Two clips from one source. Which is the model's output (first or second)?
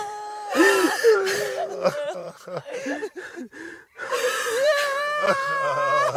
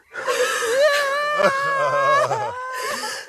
first